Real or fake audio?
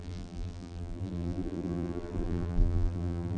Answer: fake